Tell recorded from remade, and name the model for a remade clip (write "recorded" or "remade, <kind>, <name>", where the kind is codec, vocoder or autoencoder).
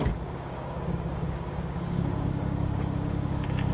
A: remade, codec, DAC